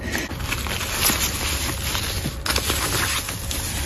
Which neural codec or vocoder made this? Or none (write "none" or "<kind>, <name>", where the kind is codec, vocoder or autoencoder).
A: none